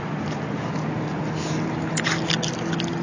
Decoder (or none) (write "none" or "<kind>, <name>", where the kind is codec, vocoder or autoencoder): none